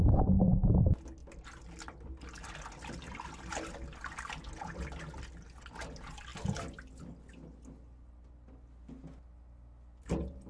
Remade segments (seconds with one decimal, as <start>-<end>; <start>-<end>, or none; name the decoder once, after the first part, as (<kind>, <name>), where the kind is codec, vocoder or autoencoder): none